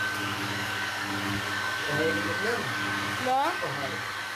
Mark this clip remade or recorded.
remade